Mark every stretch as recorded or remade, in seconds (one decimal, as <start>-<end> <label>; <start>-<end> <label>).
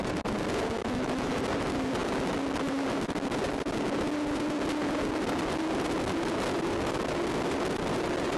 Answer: 0.0-0.8 recorded; 0.8-1.4 remade; 1.4-8.4 recorded